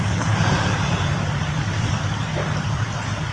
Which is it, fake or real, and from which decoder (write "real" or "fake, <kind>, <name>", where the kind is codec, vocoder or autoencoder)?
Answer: fake, vocoder, BigVGAN v2